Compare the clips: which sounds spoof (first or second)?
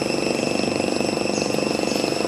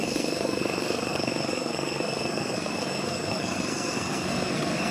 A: second